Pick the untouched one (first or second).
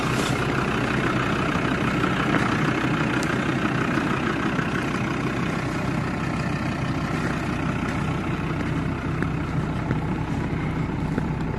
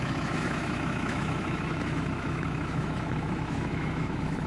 first